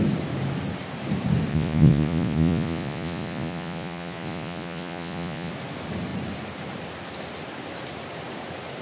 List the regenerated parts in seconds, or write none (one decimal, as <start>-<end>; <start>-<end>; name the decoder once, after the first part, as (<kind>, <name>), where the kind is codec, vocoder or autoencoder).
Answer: 1.5-5.5 (vocoder, Vocos)